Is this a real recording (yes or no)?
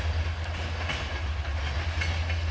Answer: yes